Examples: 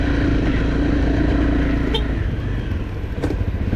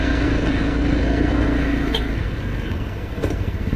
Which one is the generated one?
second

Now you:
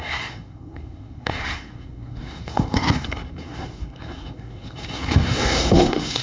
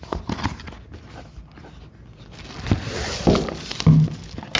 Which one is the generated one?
first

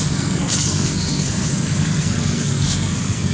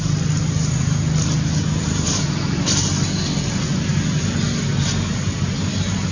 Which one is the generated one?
first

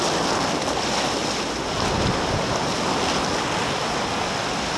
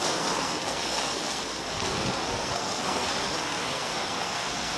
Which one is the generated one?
second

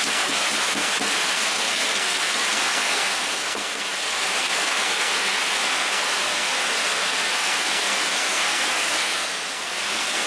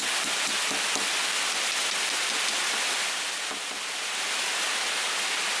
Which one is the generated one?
first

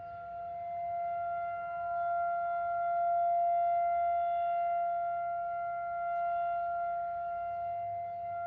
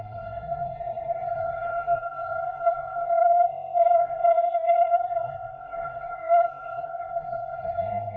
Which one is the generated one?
second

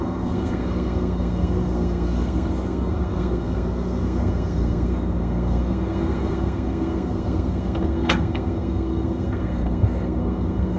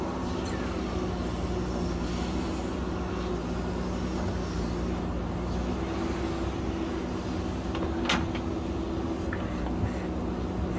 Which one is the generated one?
first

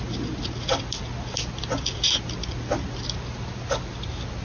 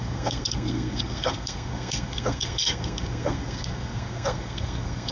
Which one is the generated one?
second